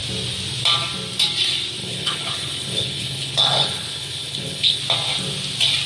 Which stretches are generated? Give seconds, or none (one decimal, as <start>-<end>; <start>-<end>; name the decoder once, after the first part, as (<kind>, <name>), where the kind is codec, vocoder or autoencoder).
1.8-4.8 (codec, HILCodec)